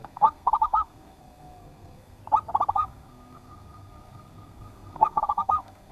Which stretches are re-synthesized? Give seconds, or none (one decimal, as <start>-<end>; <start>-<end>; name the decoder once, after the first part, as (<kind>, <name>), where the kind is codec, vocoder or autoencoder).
0.0-2.2 (codec, SNAC); 2.7-5.9